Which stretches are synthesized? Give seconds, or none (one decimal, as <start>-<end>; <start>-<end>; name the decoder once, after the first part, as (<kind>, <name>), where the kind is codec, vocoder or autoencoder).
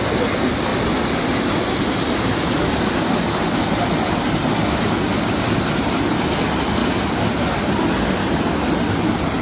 none